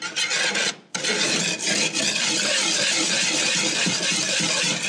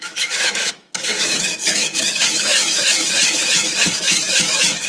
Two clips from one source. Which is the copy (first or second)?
second